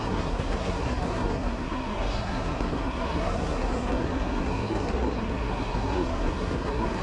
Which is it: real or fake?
fake